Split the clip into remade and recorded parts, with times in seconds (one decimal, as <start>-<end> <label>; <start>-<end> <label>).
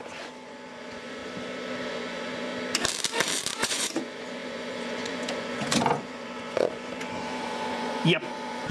0.0-1.2 remade; 1.2-1.9 recorded; 1.9-2.5 remade; 2.5-3.5 recorded; 3.5-8.7 remade